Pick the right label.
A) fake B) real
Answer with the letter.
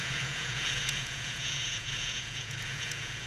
A